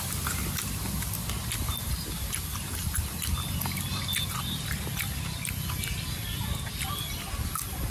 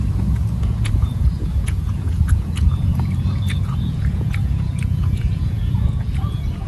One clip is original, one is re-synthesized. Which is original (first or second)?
first